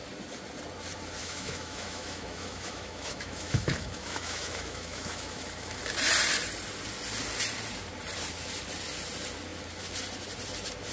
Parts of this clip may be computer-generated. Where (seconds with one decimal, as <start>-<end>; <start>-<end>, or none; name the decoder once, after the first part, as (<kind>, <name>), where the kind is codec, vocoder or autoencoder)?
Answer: 1.2-5.8 (autoencoder, DAC-VAE)